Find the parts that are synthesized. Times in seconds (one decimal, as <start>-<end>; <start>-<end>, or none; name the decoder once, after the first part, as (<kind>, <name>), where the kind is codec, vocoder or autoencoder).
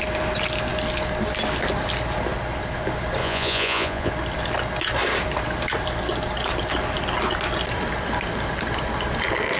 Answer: 3.2-4.1 (vocoder, Vocos)